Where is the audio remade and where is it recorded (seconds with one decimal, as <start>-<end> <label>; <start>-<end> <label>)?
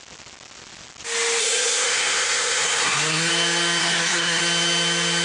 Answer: 0.0-1.4 recorded; 1.4-3.3 remade; 3.3-3.8 recorded; 3.8-4.4 remade; 4.4-5.2 recorded